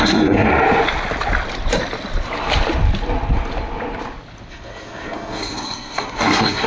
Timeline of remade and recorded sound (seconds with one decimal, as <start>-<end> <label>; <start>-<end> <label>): 0.0-0.5 remade; 0.5-4.5 recorded; 4.5-6.7 remade